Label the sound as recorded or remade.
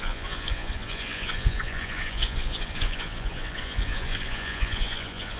remade